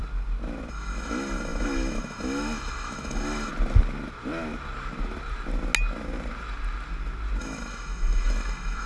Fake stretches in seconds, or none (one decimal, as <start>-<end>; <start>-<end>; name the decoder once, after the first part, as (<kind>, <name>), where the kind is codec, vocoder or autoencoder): 0.7-3.5 (autoencoder, DAC-VAE); 7.4-8.9